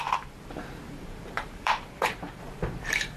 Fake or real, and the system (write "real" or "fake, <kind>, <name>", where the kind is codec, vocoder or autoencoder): fake, vocoder, BigVGAN v2